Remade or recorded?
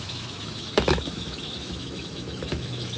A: remade